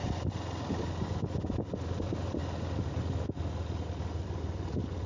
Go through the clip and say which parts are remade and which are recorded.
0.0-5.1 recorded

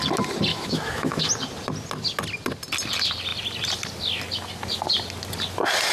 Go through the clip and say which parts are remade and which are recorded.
0.0-0.5 recorded; 0.5-1.3 remade; 1.3-5.9 recorded

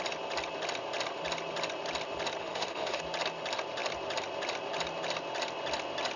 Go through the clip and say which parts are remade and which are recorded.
0.0-2.4 recorded; 2.4-3.0 remade; 3.0-6.2 recorded